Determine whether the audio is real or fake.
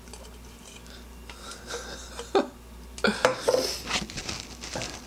real